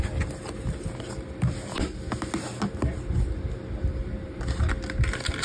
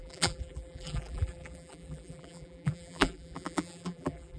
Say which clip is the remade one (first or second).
second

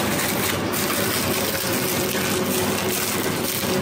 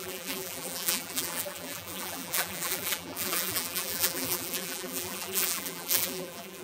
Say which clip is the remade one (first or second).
second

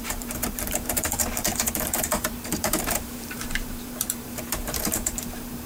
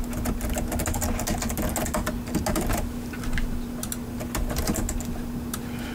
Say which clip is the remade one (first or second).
first